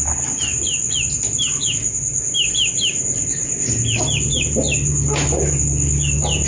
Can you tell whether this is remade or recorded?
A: recorded